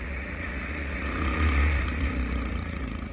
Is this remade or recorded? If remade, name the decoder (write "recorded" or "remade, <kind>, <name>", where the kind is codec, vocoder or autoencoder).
remade, vocoder, Vocos